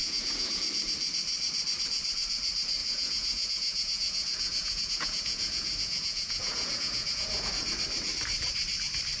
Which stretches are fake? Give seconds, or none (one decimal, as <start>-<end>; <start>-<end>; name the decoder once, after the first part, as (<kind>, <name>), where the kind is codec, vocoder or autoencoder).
0.0-0.6 (vocoder, Vocos); 2.8-7.5